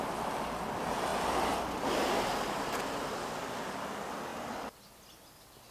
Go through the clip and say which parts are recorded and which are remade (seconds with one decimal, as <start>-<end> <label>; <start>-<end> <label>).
0.0-5.7 recorded